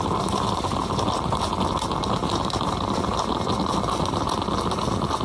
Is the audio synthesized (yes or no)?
no